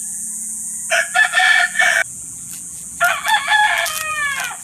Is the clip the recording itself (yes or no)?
no